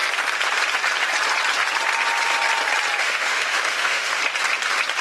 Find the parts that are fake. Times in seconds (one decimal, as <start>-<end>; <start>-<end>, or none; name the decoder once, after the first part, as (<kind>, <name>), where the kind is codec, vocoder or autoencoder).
3.0-4.2 (autoencoder, DAC-VAE)

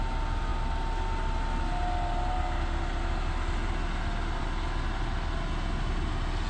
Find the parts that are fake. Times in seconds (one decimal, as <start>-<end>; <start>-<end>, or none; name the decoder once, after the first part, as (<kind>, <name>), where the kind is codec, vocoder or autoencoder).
none

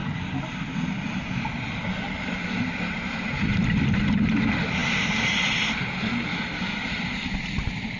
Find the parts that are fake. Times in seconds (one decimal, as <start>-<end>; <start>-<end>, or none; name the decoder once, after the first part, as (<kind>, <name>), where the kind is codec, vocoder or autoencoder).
6.3-6.8 (autoencoder, DAC-VAE)

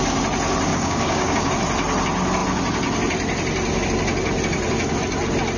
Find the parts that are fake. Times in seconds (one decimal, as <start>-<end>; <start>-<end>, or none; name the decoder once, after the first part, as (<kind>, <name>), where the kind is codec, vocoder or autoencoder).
0.7-1.5 (codec, DAC)

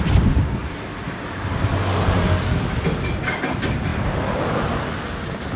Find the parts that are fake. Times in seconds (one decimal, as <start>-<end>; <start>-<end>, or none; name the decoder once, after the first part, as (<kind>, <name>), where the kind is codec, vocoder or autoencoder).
0.6-2.2 (vocoder, BigVGAN v2); 3.9-4.5

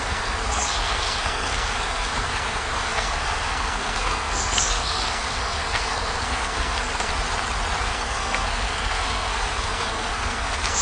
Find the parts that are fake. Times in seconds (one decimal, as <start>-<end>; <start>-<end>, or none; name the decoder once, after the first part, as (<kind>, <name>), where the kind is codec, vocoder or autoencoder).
0.0-7.1 (codec, SNAC); 7.8-10.8

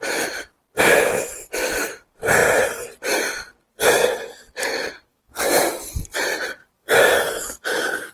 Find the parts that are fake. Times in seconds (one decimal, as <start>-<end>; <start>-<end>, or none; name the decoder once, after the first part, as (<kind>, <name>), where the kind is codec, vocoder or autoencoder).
5.1-5.6 (codec, DAC); 6.8-8.1

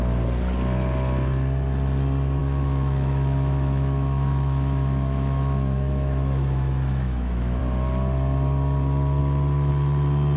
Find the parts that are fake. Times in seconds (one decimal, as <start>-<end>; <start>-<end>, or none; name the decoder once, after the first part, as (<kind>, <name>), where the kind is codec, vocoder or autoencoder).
2.4-7.6 (autoencoder, DAC-VAE)